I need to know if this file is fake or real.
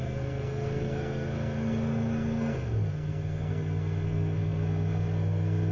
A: fake